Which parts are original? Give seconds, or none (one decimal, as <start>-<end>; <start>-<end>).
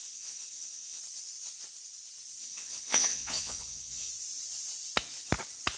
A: 1.0-2.4; 4.1-5.8